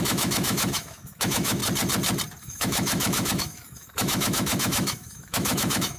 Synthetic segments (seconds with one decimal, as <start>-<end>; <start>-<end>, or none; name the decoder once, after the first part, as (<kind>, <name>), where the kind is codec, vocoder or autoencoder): 0.0-1.6 (autoencoder, DAC-VAE); 2.4-6.0